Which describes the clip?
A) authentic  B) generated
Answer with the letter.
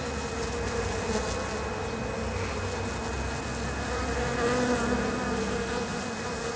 A